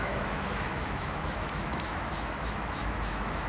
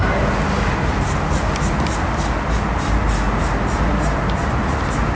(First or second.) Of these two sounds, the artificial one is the first